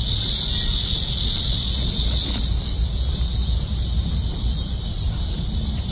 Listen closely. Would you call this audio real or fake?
real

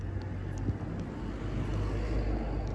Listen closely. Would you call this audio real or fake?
real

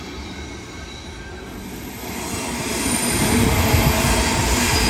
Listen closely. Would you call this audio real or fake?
real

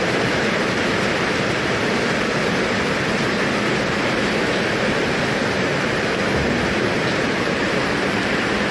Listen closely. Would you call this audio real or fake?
fake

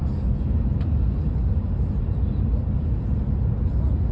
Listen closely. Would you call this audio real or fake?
real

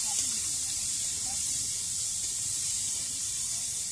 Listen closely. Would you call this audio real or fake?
fake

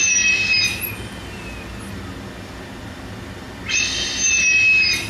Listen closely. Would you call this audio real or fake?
real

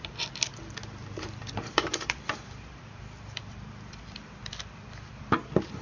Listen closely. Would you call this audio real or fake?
fake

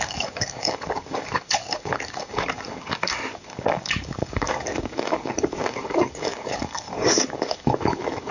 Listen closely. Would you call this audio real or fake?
fake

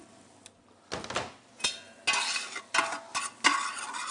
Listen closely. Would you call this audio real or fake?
real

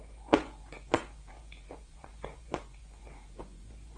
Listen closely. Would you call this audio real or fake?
fake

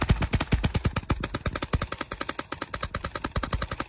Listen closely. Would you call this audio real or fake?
real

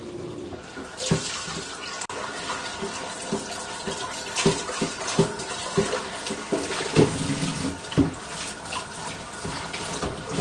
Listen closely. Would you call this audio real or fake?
real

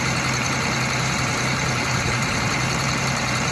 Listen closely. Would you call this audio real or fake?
fake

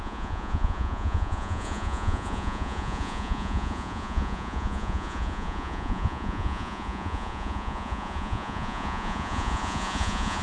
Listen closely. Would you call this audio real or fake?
fake